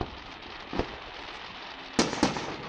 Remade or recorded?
recorded